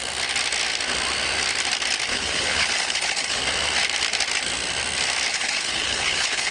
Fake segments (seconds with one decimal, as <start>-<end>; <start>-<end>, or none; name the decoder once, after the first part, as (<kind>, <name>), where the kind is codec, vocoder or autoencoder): 2.1-3.4 (codec, HILCodec); 5.3-6.5